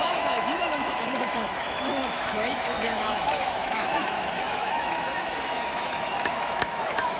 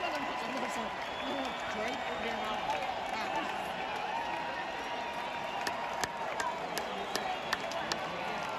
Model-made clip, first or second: first